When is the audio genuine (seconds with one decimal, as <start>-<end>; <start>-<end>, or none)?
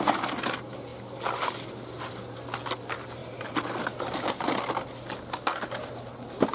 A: 0.0-6.5